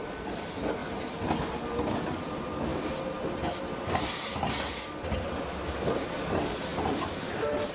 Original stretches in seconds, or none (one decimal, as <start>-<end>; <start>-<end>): 0.0-0.8; 2.2-6.7